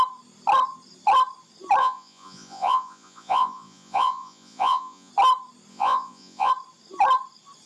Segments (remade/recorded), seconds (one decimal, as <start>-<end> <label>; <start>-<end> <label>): 0.0-1.8 recorded; 1.8-5.1 remade; 5.1-5.7 recorded; 5.7-6.5 remade; 6.5-7.7 recorded